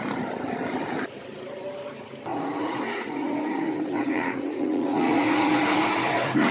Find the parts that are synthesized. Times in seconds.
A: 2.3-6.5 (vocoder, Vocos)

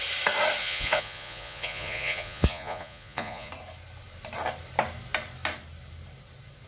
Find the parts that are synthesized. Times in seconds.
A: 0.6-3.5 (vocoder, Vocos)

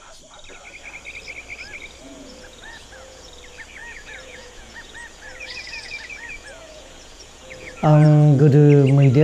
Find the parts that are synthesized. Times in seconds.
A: 2.0-3.3 (vocoder, Vocos); 3.8-8.4